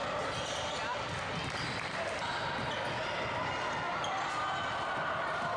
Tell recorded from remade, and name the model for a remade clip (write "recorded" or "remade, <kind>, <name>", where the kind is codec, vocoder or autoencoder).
recorded